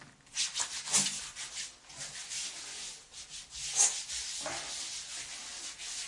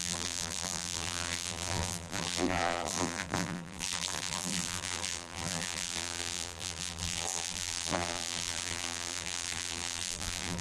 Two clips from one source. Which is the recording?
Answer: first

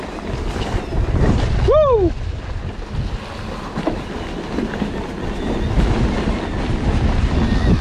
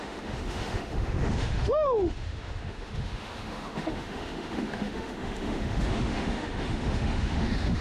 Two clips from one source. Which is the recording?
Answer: first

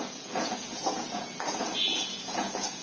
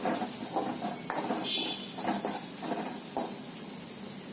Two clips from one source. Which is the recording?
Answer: second